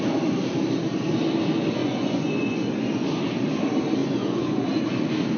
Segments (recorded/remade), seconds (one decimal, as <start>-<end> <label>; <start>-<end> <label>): 0.0-1.8 recorded; 1.8-3.2 remade; 3.2-4.0 recorded; 4.0-4.6 remade; 4.6-5.4 recorded